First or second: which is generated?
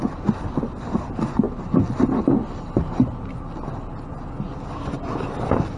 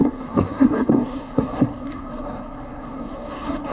second